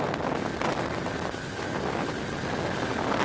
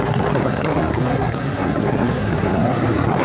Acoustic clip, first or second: first